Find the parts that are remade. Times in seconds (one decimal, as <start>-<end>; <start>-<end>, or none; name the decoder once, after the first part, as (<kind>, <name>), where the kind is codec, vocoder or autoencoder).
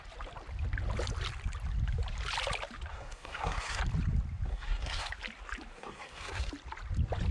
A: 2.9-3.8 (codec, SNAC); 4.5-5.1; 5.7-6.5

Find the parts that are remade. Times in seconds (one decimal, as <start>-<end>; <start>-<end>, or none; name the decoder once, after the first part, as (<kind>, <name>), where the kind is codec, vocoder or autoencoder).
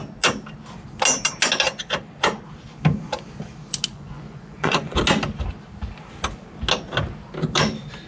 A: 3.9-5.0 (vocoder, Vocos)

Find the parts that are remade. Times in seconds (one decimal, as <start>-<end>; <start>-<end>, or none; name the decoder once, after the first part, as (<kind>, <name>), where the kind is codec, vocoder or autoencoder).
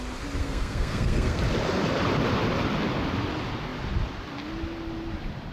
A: 0.4-1.4 (codec, SNAC)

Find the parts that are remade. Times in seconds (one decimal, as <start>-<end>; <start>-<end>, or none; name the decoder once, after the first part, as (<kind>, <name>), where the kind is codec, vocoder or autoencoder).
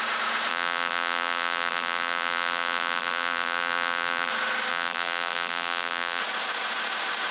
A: 0.5-4.3 (vocoder, BigVGAN v2); 4.7-6.2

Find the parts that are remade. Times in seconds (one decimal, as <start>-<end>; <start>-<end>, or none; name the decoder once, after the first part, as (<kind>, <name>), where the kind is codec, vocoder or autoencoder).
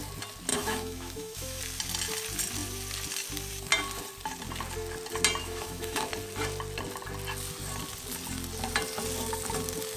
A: 0.5-1.6 (autoencoder, DAC-VAE); 5.4-6.1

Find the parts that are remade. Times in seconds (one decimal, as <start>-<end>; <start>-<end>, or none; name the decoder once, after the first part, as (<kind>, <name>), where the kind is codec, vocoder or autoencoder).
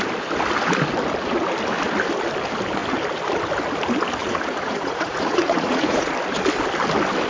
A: 4.2-6.1 (vocoder, Vocos)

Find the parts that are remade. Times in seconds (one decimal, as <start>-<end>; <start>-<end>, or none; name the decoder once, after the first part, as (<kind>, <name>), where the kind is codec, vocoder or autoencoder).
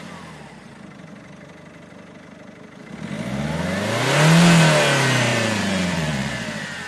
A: 5.3-6.3 (vocoder, Vocos)